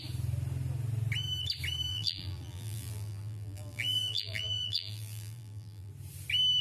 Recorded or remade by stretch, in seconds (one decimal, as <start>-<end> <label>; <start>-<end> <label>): 0.0-1.9 recorded; 1.9-5.9 remade; 5.9-6.6 recorded